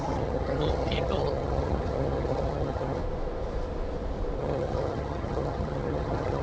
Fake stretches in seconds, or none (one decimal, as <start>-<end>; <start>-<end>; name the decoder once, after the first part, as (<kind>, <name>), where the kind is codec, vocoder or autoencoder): 0.0-3.0 (vocoder, HiFi-GAN); 4.4-6.4

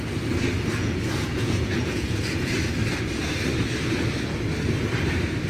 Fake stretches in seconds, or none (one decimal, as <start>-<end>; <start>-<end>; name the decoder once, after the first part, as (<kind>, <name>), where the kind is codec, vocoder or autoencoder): 0.8-2.5 (vocoder, Vocos)

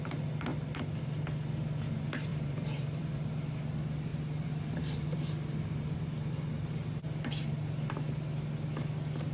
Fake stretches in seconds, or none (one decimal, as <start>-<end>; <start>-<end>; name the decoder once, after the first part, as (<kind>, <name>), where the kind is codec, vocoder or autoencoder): 2.3-3.3 (vocoder, BigVGAN v2)

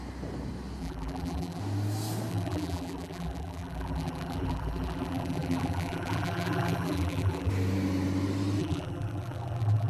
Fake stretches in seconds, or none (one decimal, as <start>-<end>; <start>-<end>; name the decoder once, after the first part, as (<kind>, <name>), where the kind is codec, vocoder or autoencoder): 0.8-1.6 (vocoder, BigVGAN v2); 2.3-7.5; 8.6-9.9

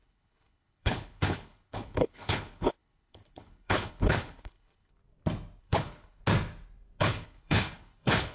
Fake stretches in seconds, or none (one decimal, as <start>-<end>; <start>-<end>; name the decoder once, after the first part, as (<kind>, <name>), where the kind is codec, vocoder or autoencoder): 0.0-4.9 (codec, HILCodec); 5.6-6.2; 7.0-8.3

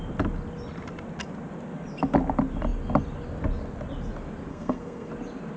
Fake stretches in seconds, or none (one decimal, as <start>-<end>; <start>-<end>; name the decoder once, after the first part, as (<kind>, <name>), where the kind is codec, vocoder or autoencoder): 4.5-5.1 (codec, SNAC)